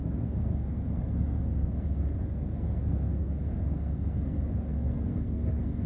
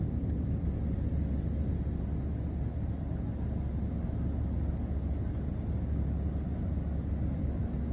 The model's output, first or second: first